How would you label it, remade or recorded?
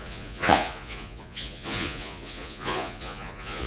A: remade